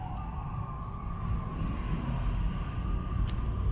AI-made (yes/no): no